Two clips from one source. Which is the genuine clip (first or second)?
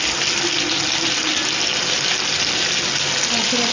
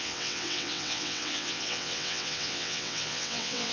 first